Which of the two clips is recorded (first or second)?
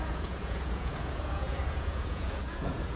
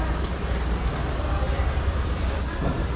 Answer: second